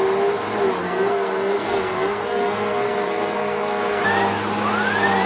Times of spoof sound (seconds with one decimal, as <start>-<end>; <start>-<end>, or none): 0.8-4.0